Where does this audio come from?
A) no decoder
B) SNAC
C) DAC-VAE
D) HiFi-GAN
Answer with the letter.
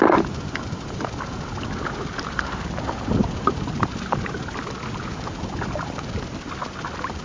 A